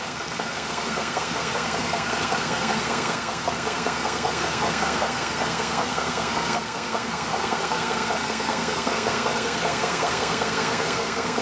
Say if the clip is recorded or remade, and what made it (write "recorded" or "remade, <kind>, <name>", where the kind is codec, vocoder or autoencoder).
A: remade, codec, SNAC